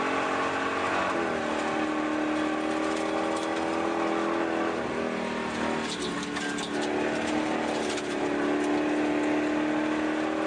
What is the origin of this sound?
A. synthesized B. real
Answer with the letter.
B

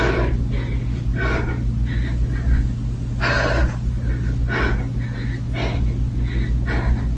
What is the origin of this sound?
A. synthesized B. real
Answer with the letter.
B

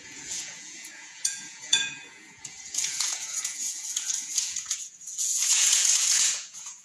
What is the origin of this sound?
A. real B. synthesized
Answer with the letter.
B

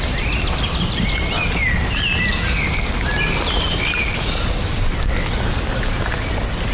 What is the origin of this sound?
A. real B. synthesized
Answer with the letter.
A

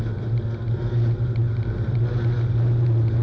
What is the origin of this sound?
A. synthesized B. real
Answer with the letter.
B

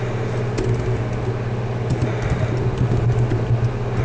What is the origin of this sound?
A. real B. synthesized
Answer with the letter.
A